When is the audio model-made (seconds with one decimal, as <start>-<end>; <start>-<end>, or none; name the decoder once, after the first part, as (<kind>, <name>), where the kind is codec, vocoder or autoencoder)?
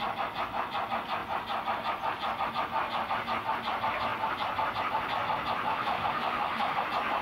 5.7-6.8 (autoencoder, DAC-VAE)